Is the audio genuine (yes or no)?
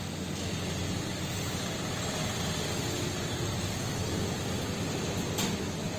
yes